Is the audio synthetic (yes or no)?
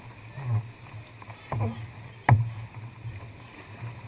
no